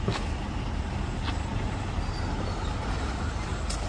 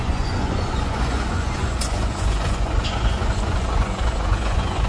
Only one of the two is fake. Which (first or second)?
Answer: second